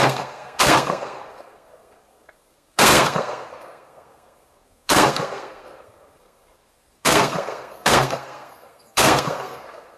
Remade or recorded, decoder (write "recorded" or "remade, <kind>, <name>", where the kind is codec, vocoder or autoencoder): remade, codec, SNAC